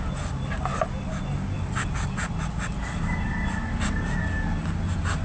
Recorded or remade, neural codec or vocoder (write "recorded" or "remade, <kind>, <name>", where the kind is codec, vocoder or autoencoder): recorded